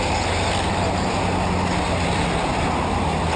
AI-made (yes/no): no